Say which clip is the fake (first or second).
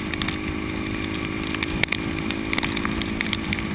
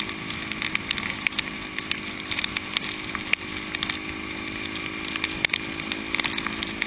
first